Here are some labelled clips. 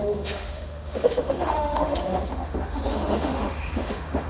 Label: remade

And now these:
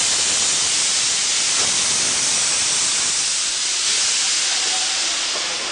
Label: recorded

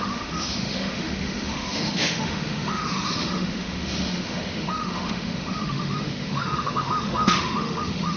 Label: remade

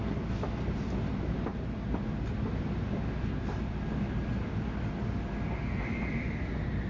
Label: recorded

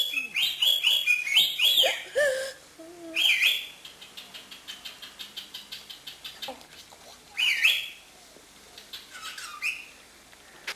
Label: recorded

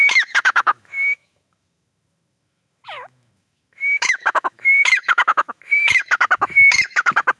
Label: remade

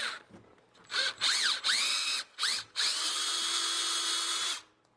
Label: recorded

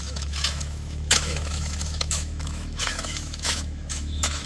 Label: remade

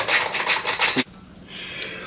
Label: recorded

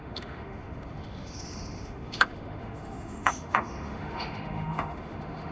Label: remade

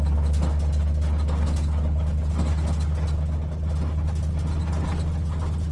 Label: recorded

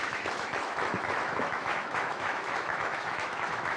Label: remade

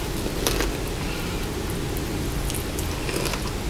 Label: recorded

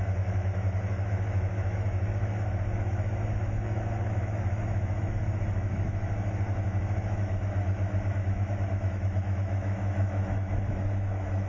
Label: remade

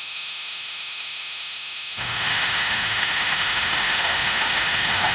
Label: remade